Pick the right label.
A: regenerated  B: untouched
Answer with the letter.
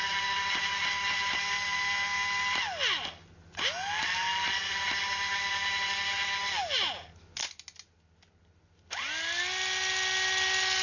B